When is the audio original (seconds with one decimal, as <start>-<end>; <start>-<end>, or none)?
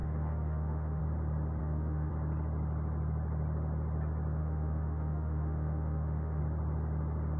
1.0-1.6; 2.1-4.4; 6.4-7.4